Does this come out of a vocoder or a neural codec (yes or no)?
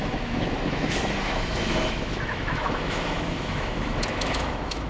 yes